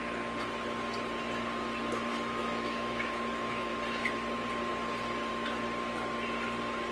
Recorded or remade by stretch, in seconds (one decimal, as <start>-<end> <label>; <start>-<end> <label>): 0.0-2.1 recorded; 2.1-3.7 remade; 3.7-6.9 recorded